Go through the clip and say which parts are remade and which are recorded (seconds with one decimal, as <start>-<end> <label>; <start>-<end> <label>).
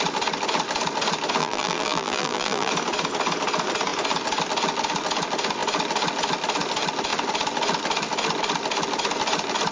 0.0-1.4 recorded; 1.4-2.7 remade; 2.7-9.7 recorded